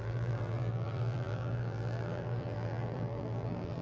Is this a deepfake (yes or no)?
yes